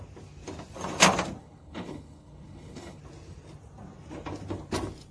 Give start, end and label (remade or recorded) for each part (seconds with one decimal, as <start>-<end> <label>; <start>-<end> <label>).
0.0-1.4 recorded; 1.4-3.0 remade; 3.0-5.1 recorded